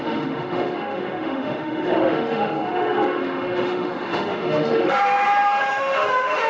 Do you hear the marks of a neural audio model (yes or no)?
yes